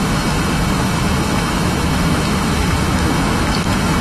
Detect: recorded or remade remade